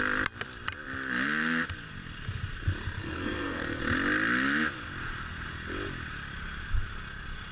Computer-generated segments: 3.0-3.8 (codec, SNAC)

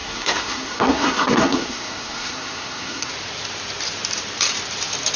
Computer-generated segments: 0.0-3.1 (codec, SNAC)